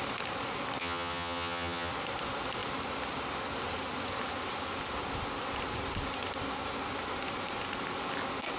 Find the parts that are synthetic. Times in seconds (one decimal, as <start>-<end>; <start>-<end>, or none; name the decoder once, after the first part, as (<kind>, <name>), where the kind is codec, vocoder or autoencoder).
0.8-1.9 (vocoder, HiFi-GAN)